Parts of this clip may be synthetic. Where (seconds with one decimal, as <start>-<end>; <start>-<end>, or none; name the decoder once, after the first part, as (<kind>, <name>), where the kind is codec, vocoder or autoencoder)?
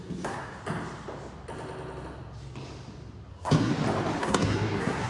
0.0-0.6 (codec, SNAC); 3.3-3.7; 4.2-5.1